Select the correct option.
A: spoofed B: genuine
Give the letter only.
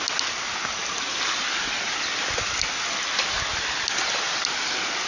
B